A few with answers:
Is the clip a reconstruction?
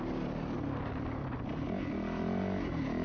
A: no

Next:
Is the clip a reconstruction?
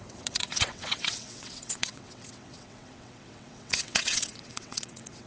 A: yes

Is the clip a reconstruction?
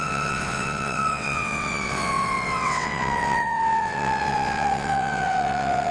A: yes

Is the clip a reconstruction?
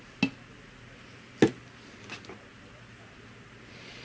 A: no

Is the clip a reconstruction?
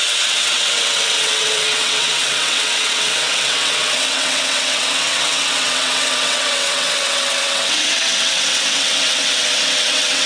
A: yes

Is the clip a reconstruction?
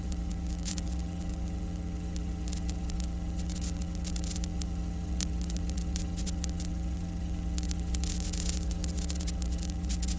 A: yes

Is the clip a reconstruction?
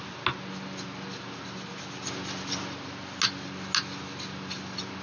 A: no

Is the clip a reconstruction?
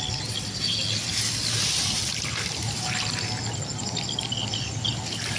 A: no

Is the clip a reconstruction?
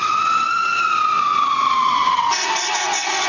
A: yes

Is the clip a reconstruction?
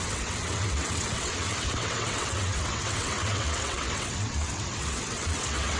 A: yes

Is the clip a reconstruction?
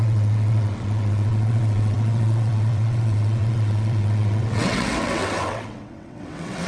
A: yes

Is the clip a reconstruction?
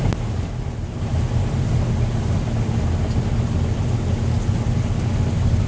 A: no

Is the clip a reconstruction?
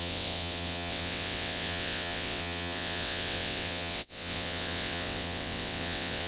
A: yes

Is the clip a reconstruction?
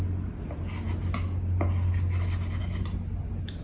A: no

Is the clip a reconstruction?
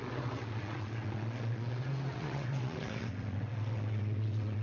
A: yes